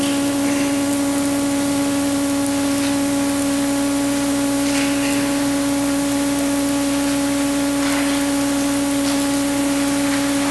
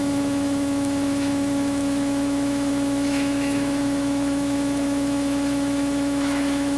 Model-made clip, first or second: second